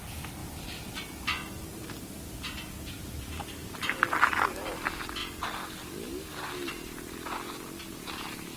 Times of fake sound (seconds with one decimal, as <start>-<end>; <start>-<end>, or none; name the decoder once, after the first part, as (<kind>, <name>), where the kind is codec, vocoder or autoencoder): none